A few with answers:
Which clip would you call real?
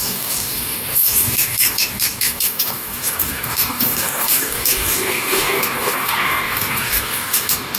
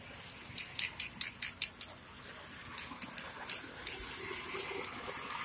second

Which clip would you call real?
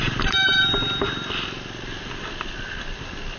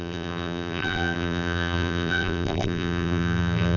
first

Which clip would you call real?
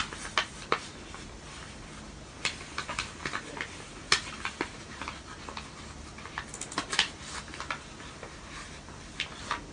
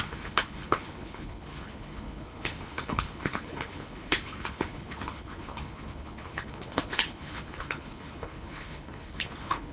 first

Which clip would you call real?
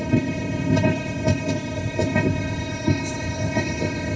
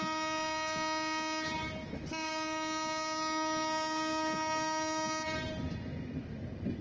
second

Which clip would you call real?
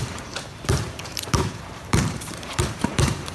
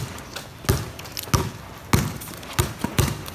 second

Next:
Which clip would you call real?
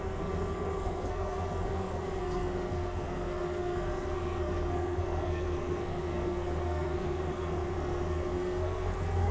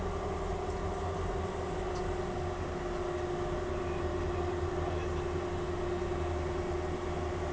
second